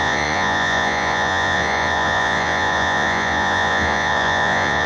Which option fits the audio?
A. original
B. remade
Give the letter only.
B